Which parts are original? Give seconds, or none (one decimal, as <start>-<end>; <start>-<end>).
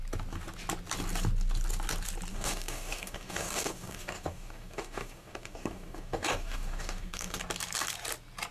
0.0-2.3; 7.4-8.5